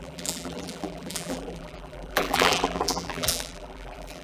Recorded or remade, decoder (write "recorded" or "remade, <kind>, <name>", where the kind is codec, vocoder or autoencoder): remade, vocoder, BigVGAN v2